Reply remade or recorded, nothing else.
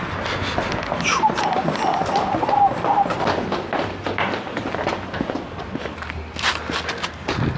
recorded